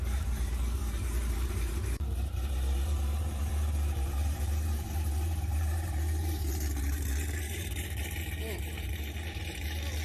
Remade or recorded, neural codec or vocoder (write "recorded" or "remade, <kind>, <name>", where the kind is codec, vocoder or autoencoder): remade, vocoder, BigVGAN v2